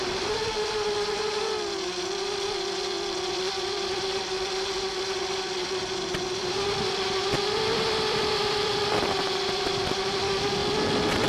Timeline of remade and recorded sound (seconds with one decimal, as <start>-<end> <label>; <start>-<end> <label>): 0.0-10.6 remade; 10.6-11.3 recorded